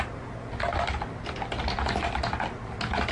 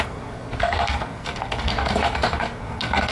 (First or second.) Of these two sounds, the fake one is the second